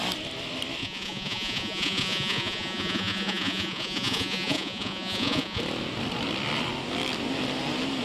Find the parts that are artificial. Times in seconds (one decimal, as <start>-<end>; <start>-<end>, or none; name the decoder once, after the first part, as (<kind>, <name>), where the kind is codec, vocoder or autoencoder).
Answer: 0.8-5.6 (vocoder, Vocos)